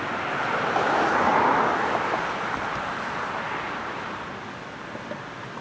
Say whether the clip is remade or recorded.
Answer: recorded